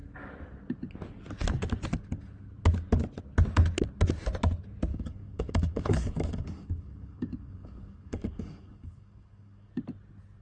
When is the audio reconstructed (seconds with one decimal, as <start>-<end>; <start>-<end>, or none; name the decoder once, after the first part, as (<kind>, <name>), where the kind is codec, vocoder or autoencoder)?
4.9-9.7 (codec, DAC)

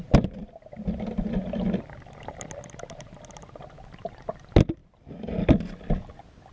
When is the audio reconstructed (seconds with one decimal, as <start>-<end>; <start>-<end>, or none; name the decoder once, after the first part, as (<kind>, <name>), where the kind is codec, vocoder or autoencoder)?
none